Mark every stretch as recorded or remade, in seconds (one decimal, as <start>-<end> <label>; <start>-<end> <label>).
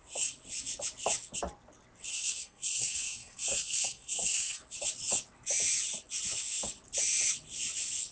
0.0-2.1 recorded; 2.1-4.6 remade; 4.6-8.1 recorded